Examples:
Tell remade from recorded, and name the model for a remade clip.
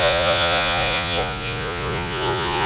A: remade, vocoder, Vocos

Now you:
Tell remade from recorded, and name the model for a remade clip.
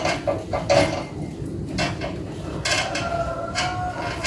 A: recorded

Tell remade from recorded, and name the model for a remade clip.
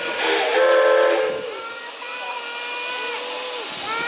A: recorded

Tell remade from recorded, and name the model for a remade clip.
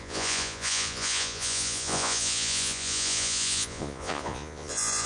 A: remade, vocoder, Vocos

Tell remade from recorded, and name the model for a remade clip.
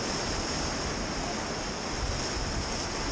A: recorded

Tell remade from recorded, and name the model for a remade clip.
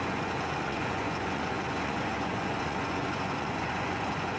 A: remade, vocoder, Vocos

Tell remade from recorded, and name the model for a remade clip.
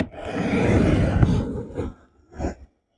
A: recorded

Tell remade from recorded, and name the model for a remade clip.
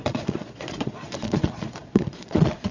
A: remade, vocoder, Vocos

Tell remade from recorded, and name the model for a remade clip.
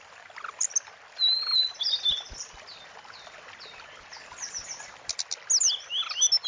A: recorded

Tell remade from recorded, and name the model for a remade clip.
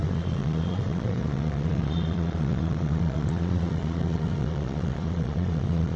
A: remade, vocoder, Vocos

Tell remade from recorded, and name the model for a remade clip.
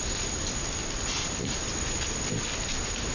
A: recorded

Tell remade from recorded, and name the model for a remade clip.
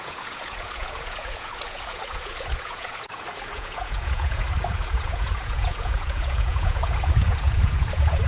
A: remade, vocoder, Vocos